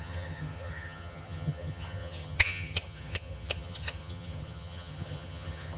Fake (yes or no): yes